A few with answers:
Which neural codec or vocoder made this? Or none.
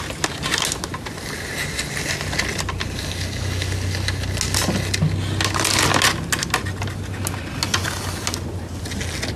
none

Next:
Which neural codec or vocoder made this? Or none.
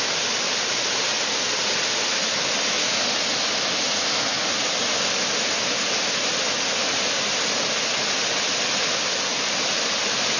none